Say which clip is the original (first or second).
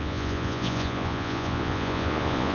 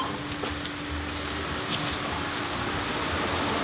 second